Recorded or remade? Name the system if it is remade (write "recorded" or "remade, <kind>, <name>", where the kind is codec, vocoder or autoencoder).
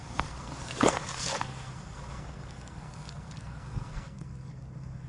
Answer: remade, codec, SNAC